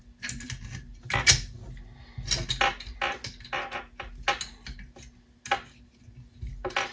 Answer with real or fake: real